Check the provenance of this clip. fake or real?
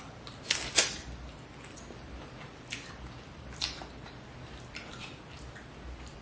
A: real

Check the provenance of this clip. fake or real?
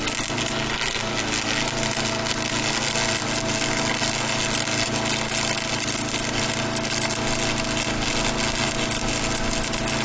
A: real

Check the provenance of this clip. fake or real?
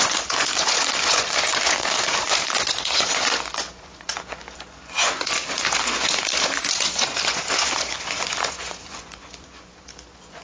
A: fake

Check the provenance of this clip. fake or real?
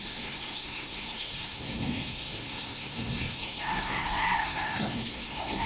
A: fake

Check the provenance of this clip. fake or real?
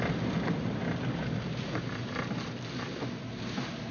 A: real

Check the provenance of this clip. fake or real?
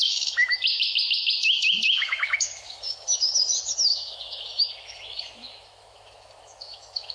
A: fake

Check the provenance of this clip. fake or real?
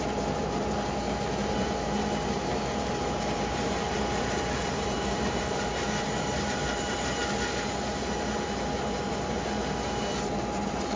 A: fake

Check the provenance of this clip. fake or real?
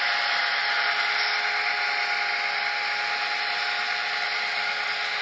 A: real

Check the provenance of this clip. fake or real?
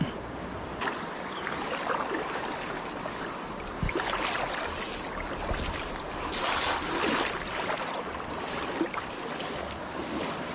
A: real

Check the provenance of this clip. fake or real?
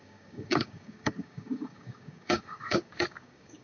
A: fake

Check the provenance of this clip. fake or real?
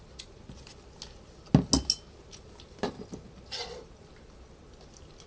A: real